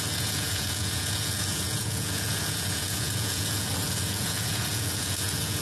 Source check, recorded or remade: remade